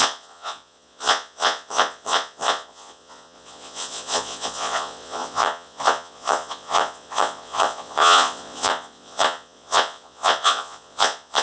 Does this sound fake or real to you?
fake